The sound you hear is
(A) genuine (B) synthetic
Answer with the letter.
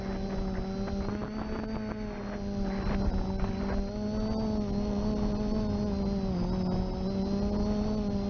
A